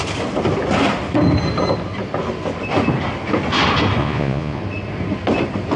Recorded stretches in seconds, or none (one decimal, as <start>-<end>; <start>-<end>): 0.0-4.0; 4.6-5.8

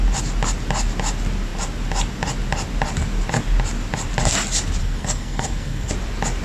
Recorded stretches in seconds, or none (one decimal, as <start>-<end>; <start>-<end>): 0.0-4.8; 5.9-6.4

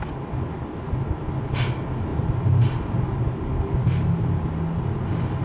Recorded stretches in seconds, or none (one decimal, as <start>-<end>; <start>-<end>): 0.0-5.4

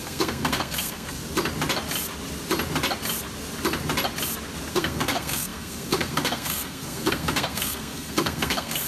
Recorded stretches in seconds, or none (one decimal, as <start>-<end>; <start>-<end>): 1.2-4.7

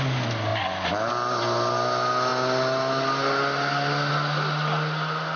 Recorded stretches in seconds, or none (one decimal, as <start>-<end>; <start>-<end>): 0.0-5.4